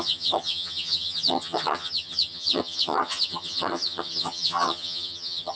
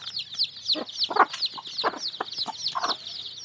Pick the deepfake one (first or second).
first